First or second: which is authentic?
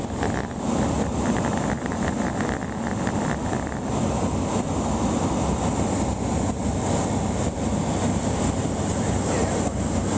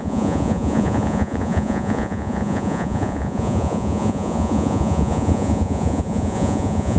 first